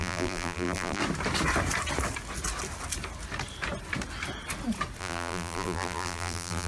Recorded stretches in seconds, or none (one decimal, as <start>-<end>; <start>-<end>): 1.0-5.0